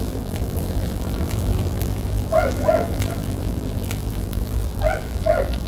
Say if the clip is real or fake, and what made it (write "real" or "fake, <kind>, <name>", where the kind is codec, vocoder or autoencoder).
fake, vocoder, BigVGAN v2